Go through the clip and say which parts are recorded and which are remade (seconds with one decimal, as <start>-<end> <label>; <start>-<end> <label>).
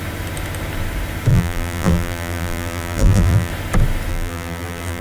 0.0-1.3 recorded; 1.3-3.5 remade; 3.5-4.1 recorded; 4.1-5.0 remade